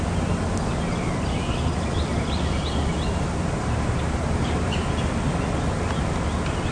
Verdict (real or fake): real